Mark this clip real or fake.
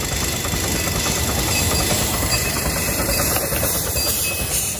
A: real